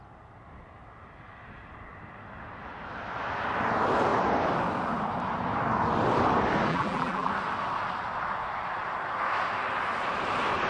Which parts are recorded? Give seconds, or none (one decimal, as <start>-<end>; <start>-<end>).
0.0-6.7; 7.3-10.7